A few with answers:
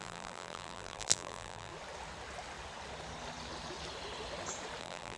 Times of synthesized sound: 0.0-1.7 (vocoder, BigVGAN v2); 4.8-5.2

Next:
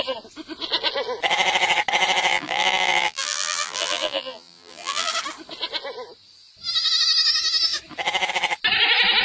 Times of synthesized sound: 2.3-5.1 (vocoder, BigVGAN v2)

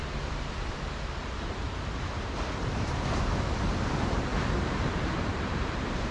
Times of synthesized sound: 2.6-3.4 (vocoder, BigVGAN v2); 4.3-6.1

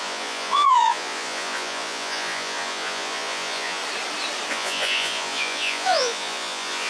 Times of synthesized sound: 0.0-3.8 (vocoder, Vocos); 4.5-6.9

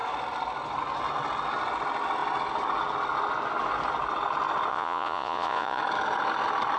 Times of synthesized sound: 4.7-5.8 (vocoder, Vocos)